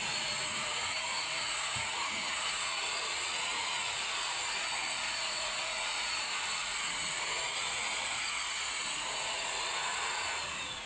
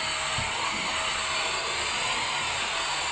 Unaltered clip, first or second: second